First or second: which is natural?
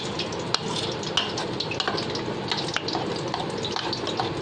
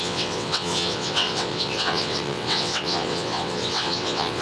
first